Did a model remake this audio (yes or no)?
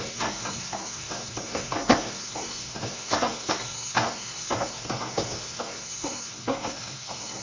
yes